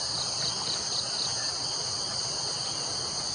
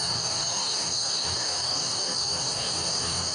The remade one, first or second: second